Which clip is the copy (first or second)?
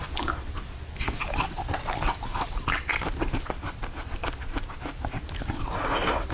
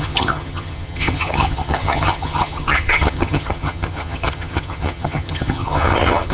second